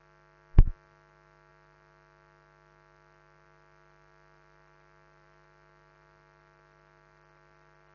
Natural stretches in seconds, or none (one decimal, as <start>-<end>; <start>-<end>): 0.0-7.9

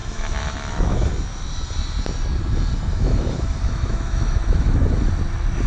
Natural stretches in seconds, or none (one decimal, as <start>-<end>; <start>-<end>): 1.1-2.9; 5.1-5.7

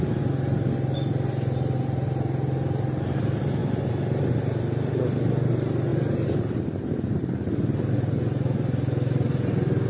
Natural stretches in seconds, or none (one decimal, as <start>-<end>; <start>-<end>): 0.0-9.9

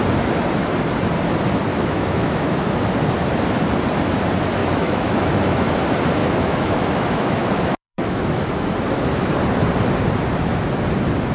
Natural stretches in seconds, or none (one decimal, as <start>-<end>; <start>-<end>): 0.0-1.7; 2.8-4.6; 5.7-6.2; 8.5-11.3

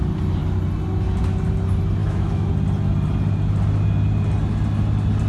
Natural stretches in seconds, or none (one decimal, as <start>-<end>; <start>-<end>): 0.0-2.0; 2.5-5.3

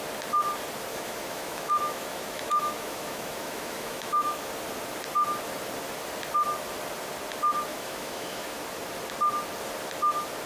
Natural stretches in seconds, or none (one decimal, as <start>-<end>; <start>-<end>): 0.0-0.9; 4.5-7.7; 8.6-10.5

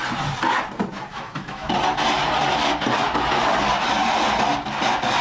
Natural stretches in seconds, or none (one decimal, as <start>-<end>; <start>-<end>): 0.0-1.1; 1.7-5.2